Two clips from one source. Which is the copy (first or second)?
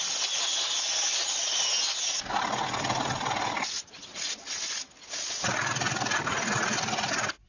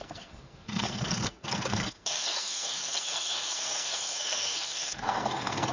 second